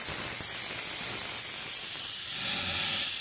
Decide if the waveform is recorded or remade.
recorded